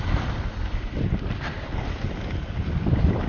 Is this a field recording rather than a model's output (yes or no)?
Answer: yes